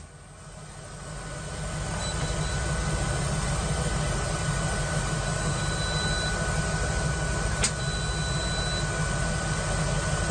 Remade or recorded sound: recorded